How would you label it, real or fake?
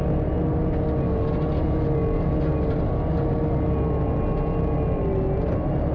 real